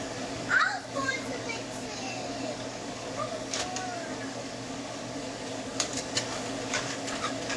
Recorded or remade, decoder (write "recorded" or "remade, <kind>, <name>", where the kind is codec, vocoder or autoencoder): remade, codec, DAC